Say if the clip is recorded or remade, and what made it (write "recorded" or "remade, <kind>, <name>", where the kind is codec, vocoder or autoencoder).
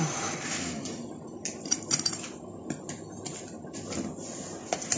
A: recorded